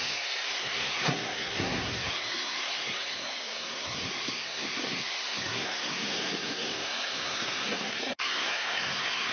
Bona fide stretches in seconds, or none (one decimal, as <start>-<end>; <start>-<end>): none